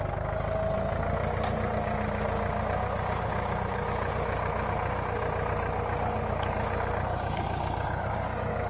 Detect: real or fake real